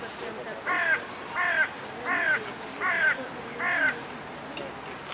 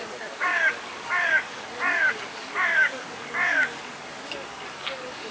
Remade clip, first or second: second